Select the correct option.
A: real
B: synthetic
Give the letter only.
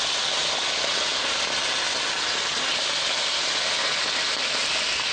A